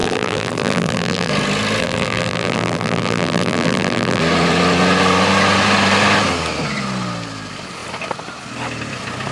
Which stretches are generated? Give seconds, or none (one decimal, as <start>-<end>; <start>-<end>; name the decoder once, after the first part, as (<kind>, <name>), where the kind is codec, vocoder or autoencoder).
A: 0.0-1.3 (vocoder, BigVGAN v2); 1.8-4.2